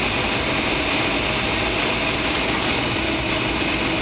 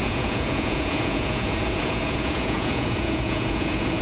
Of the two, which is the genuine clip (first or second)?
first